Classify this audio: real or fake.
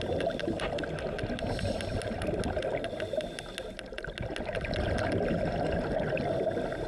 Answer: real